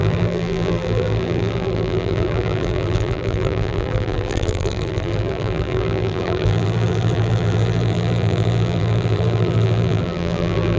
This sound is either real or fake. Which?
fake